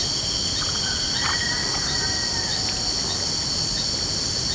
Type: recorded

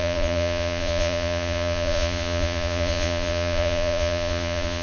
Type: remade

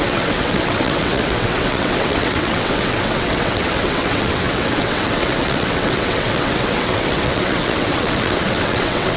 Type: remade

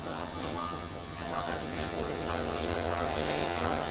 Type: remade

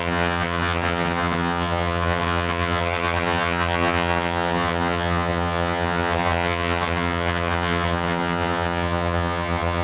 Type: remade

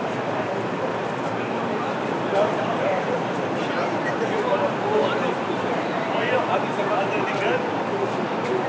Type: remade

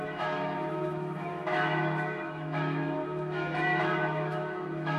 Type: remade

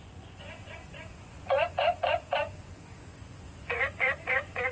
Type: remade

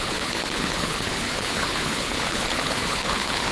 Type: remade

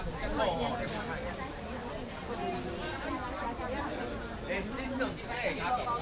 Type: recorded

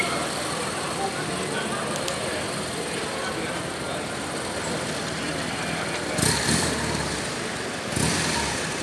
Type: recorded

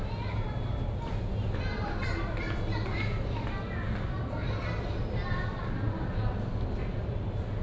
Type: recorded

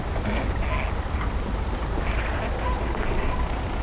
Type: recorded